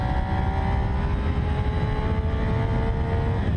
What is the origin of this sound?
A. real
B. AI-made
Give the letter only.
A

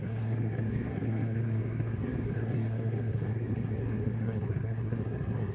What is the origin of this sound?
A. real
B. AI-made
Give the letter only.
B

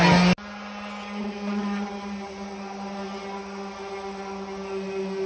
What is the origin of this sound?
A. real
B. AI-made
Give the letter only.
A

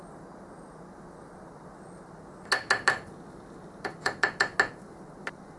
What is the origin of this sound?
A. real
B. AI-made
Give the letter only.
A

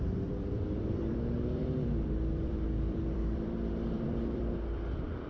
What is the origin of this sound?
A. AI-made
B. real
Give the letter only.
A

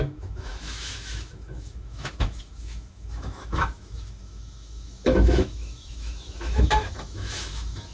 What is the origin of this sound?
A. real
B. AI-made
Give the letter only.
B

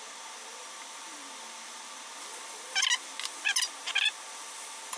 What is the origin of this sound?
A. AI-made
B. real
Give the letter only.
B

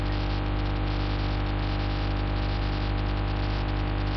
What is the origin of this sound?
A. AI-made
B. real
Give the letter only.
B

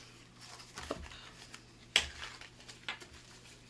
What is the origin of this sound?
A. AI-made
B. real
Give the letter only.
B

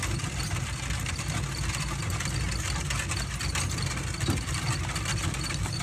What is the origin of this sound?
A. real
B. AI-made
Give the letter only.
A